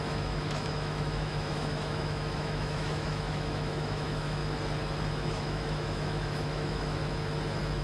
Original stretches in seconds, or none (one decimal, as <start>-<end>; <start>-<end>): 4.4-5.1; 7.0-7.8